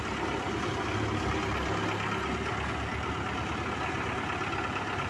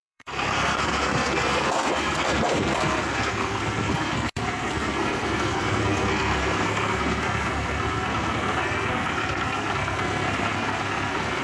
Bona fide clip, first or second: first